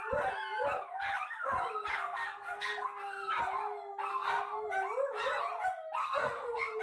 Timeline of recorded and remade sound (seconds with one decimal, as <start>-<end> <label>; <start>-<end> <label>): 0.0-1.9 recorded; 1.9-3.3 remade; 3.3-4.1 recorded; 4.1-4.7 remade; 4.7-6.0 recorded; 6.0-6.8 remade